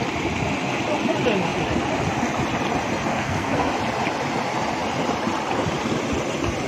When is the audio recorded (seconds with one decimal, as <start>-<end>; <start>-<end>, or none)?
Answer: 0.0-3.1; 3.7-6.7